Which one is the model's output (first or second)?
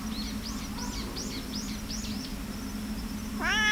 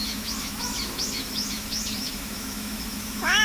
second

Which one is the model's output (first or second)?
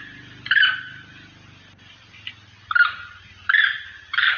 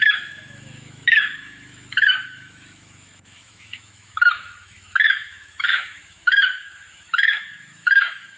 second